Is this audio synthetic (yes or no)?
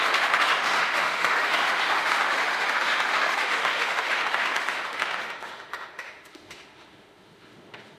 yes